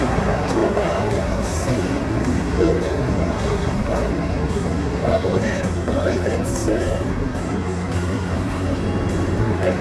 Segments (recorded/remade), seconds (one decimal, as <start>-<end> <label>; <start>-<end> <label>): 0.0-8.8 remade; 8.8-9.4 recorded; 9.4-9.8 remade